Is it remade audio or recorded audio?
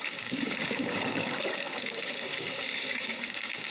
remade